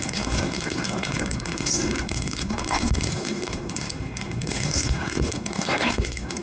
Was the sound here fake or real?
fake